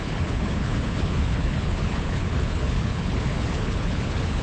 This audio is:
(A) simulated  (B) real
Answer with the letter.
A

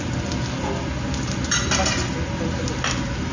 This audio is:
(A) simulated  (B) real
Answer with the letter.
B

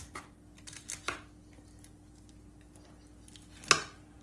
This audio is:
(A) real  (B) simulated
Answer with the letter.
A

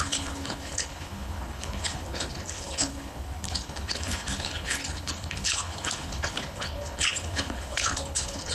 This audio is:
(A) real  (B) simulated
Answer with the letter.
B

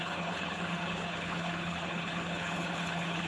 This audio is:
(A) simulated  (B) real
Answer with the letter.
A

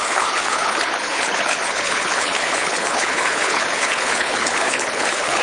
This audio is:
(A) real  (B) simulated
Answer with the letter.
B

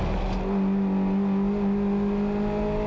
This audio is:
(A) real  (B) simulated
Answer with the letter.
A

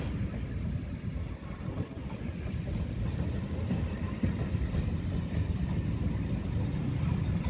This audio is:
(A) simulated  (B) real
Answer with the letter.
B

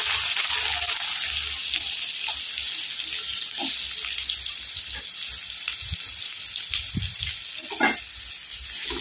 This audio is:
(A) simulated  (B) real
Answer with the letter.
B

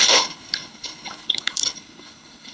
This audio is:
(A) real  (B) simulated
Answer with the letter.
B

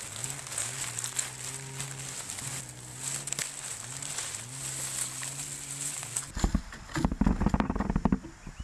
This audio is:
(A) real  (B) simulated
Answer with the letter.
A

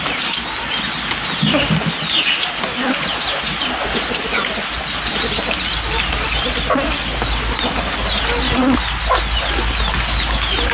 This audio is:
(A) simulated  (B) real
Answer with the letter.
B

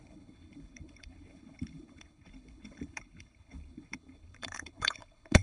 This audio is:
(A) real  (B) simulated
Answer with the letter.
B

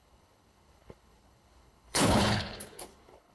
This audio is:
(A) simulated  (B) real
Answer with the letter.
A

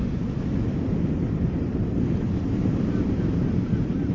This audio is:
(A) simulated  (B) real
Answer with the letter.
B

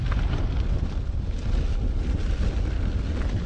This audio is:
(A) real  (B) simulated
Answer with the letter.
A